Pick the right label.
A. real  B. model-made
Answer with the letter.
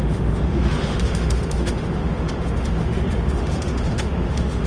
B